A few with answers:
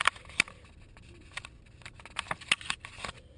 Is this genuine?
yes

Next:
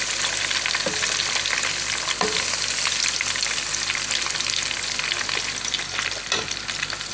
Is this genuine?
yes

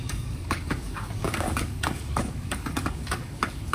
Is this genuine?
no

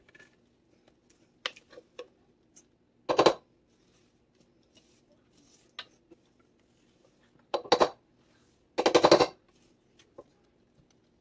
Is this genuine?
yes